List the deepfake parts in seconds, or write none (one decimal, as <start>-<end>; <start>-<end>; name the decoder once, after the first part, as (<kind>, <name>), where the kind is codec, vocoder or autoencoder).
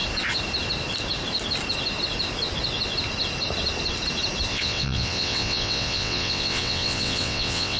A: 4.5-7.8 (vocoder, WaveNeXt)